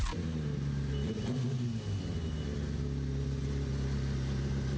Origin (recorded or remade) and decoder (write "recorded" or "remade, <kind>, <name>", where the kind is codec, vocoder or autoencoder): recorded